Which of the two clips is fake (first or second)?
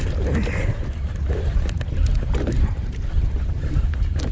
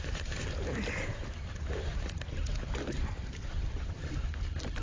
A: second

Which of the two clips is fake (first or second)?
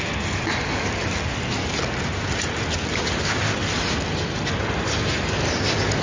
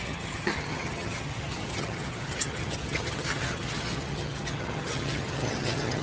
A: second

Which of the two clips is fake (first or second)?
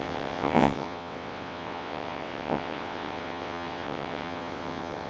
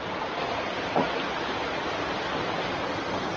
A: first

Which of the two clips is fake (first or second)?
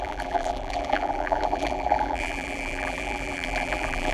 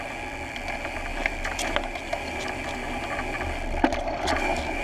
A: first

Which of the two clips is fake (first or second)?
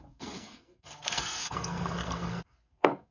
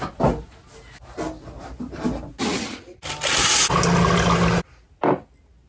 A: first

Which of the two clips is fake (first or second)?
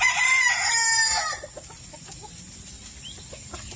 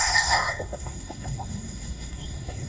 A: second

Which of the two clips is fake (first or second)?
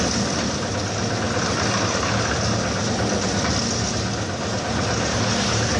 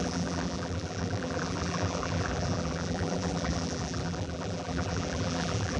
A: second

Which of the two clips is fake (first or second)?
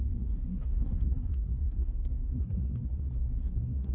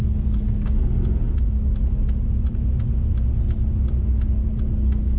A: first